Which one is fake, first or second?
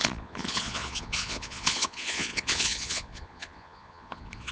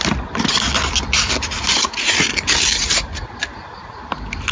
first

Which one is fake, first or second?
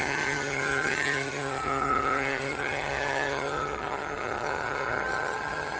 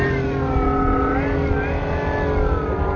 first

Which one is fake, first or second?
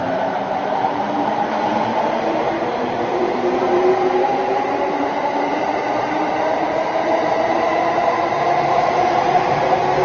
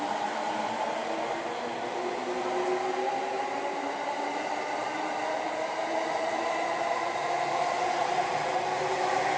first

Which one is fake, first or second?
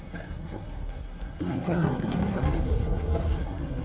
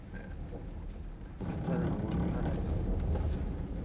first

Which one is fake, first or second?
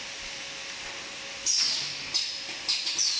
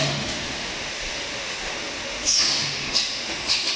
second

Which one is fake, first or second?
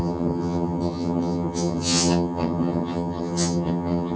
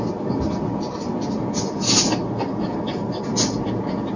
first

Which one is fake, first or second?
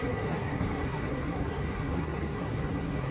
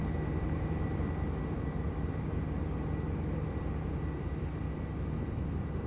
first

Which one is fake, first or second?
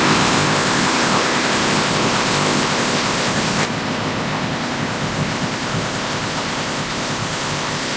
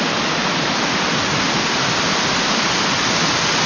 first